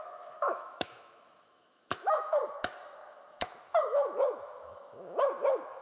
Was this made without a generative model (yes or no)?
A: no